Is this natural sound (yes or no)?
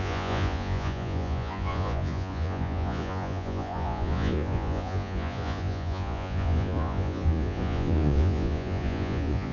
no